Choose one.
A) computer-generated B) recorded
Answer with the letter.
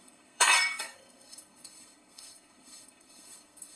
A